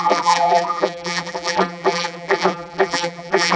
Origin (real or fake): fake